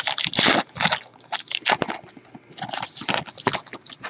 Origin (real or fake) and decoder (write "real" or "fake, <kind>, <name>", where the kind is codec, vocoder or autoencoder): real